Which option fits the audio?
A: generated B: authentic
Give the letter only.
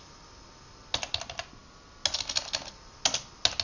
B